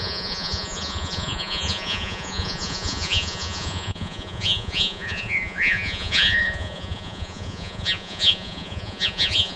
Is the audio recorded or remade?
remade